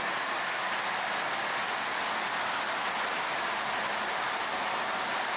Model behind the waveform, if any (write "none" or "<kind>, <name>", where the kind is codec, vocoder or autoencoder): none